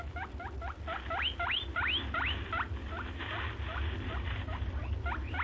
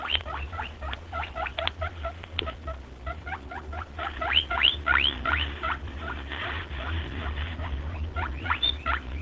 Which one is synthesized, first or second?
second